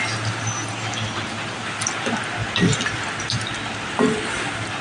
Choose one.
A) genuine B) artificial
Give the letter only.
A